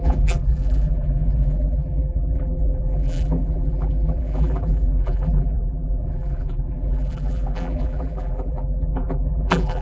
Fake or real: fake